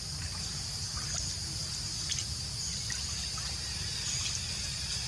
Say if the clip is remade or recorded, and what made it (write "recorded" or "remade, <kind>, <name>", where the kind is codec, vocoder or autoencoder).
recorded